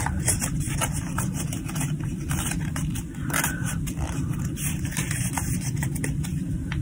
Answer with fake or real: fake